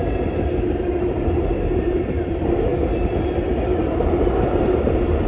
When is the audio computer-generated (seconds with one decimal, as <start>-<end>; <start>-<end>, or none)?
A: 0.0-2.7; 3.4-5.3